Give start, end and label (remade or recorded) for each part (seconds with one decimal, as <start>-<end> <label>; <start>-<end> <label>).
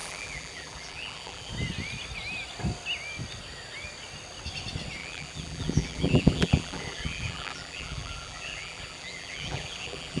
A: 0.0-1.5 remade; 1.5-5.0 recorded; 5.0-10.2 remade